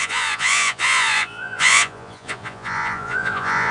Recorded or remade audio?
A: remade